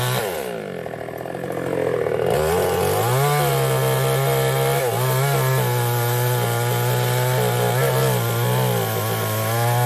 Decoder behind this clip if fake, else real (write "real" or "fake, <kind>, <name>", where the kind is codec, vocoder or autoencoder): real